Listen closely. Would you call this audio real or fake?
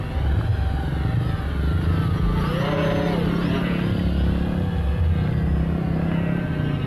real